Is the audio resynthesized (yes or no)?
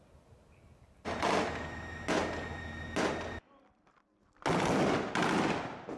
no